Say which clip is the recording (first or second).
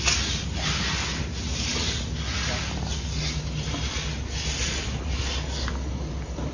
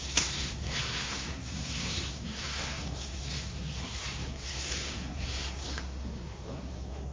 first